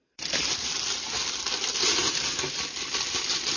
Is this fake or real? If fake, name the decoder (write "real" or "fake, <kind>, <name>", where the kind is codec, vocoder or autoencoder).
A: fake, vocoder, BigVGAN v2